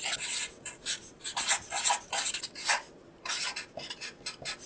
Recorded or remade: recorded